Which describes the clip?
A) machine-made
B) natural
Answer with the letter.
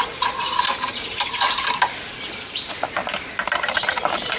B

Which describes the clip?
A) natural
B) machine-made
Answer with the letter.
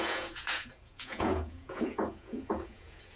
B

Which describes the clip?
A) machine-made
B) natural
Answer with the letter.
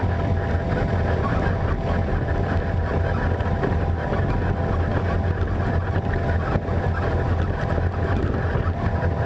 B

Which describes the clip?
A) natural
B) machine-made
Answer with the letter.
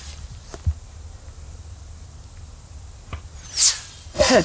A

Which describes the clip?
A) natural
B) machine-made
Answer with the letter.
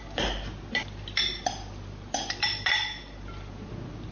A